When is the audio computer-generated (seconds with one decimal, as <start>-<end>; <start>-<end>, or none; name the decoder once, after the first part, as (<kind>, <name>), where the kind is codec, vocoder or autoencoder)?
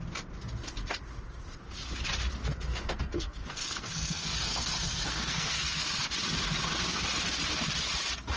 2.4-6.0 (codec, SNAC)